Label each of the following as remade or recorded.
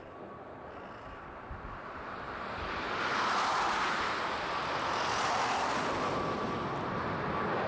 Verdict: recorded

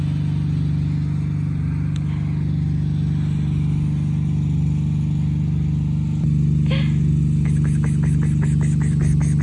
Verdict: recorded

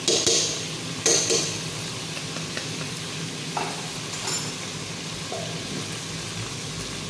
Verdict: recorded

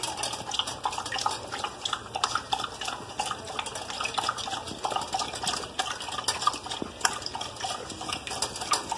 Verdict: recorded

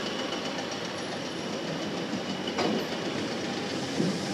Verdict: recorded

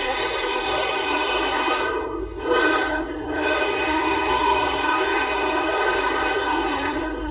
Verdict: remade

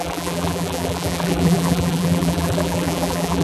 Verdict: remade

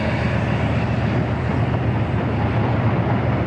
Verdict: recorded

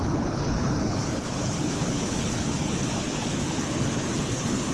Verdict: remade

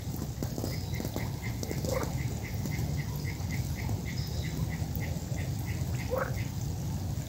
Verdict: recorded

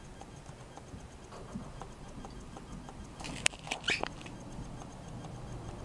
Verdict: recorded